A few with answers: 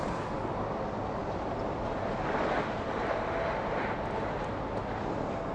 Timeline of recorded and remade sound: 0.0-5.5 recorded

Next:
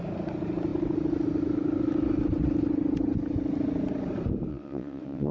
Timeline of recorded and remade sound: 0.0-4.5 recorded; 4.5-5.3 remade

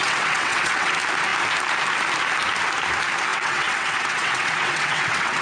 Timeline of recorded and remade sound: 0.0-0.9 remade; 0.9-3.3 recorded; 3.3-5.4 remade

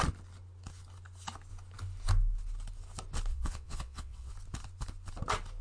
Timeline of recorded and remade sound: 0.0-3.3 recorded; 3.3-4.3 remade; 4.3-5.6 recorded

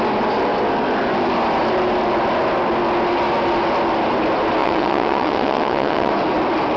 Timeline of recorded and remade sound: 0.0-4.6 recorded; 4.6-6.1 remade; 6.1-6.8 recorded

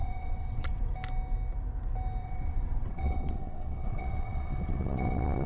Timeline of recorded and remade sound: 0.0-0.8 remade; 0.8-2.2 recorded; 2.2-5.5 remade